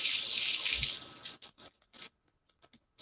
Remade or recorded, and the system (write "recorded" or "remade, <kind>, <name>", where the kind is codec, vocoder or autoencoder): recorded